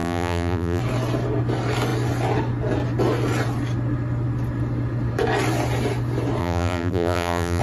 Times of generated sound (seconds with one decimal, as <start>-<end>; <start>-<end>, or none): 0.0-0.8; 6.4-7.6